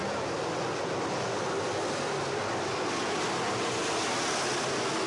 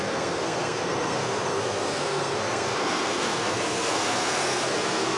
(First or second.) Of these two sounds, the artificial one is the second